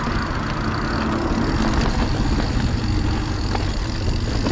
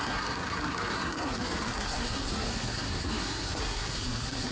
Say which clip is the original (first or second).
first